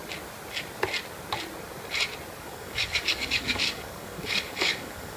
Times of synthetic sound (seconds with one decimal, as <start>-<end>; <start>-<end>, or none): 2.4-5.2